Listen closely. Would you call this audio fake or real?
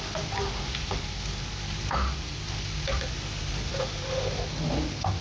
real